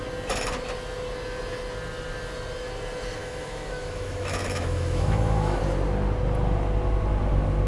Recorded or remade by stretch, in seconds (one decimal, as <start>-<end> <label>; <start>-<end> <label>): 0.0-3.2 recorded; 3.2-5.6 remade; 5.6-7.7 recorded